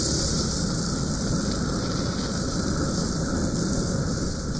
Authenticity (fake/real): fake